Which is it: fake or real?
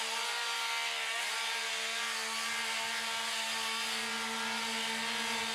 real